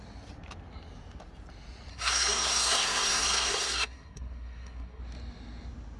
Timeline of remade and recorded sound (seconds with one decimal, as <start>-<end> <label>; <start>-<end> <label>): 0.0-1.9 recorded; 1.9-5.0 remade; 5.0-6.0 recorded